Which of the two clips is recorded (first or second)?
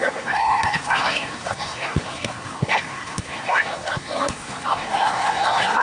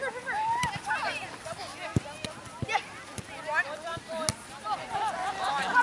second